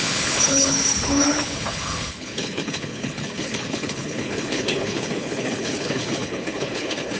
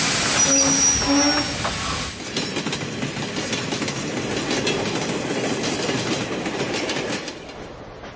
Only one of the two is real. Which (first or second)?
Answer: second